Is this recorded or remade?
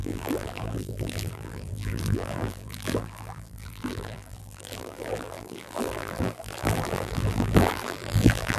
remade